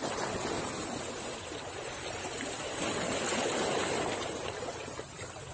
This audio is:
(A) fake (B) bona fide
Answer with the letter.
B